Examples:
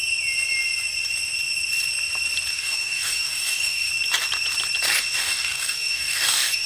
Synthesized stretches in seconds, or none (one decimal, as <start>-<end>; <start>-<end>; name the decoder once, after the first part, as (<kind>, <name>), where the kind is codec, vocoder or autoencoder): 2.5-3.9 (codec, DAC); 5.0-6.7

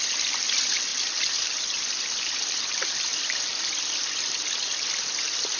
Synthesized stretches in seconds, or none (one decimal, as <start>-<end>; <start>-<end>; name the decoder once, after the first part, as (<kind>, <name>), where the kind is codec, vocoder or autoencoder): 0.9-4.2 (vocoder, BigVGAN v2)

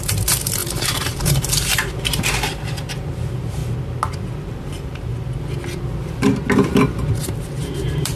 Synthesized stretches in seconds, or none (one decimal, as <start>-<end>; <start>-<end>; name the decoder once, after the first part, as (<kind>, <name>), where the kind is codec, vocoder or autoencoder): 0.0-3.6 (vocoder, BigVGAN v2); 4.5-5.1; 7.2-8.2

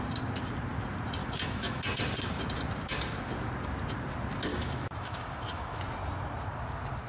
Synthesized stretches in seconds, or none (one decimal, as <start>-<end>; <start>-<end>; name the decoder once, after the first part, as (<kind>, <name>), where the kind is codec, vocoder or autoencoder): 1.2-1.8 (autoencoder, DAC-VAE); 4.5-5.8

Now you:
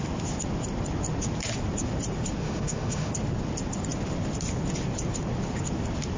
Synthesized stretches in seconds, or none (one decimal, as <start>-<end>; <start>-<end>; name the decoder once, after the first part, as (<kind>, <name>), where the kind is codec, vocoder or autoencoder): 2.4-3.1 (autoencoder, DAC-VAE)

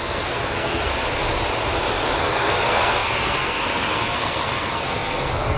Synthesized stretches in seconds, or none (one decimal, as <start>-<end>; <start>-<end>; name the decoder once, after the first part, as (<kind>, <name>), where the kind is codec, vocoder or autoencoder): 0.0-0.9 (codec, SNAC); 2.2-5.6